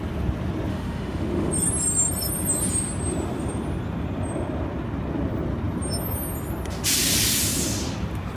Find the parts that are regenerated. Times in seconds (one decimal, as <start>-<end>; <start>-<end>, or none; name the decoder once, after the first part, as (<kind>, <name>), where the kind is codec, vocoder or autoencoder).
0.7-1.5 (autoencoder, DAC-VAE)

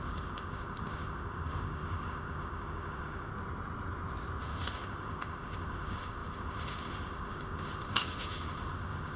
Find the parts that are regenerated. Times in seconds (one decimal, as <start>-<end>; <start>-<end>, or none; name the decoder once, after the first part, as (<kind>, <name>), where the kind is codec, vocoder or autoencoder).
0.0-3.3 (autoencoder, DAC-VAE); 4.4-9.2